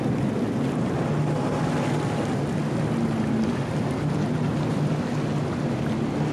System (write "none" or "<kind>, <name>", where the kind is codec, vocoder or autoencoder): none